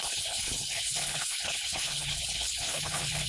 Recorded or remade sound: remade